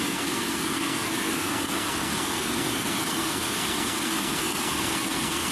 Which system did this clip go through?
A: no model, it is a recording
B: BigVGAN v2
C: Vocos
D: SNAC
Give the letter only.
D